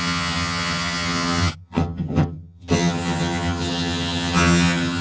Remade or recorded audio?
remade